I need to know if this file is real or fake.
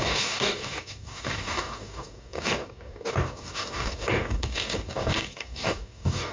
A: fake